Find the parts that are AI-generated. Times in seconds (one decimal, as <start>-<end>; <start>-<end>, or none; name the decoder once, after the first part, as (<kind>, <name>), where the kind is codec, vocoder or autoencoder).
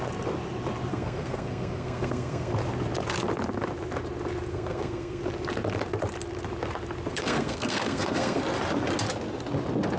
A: 0.9-2.5 (codec, SNAC); 4.5-5.2; 7.1-8.4